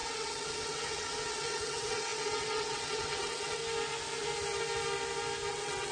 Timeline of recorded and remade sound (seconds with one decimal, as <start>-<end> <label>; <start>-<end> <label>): 0.0-3.6 remade; 3.6-5.5 recorded; 5.5-5.9 remade